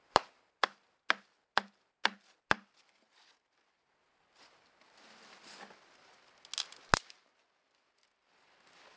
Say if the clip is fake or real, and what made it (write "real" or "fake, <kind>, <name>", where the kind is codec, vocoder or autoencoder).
real